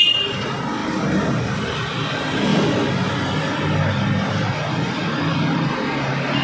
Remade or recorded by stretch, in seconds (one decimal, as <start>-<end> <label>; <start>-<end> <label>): 0.0-6.4 recorded